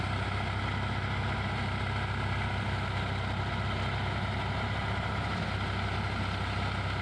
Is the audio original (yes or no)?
yes